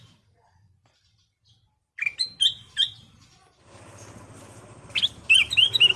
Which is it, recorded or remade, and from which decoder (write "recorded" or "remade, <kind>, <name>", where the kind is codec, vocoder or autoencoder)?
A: recorded